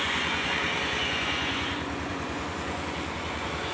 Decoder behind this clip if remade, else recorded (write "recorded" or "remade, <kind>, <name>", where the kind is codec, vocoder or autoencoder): remade, vocoder, Vocos